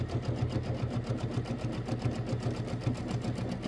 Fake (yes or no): no